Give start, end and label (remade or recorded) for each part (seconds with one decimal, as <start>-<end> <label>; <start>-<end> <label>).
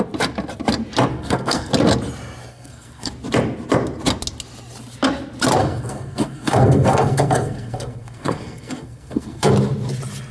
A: 0.0-1.1 recorded; 1.1-1.7 remade; 1.7-2.5 recorded; 2.5-3.1 remade; 3.1-5.6 recorded; 5.6-9.5 remade; 9.5-10.3 recorded